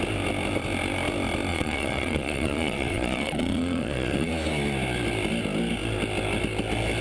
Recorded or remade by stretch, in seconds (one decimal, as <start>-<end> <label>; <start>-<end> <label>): 0.0-1.5 recorded; 1.5-4.3 remade; 4.3-7.0 recorded